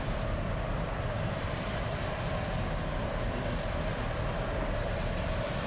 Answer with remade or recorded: remade